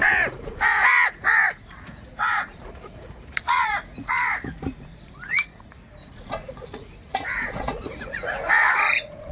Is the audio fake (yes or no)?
yes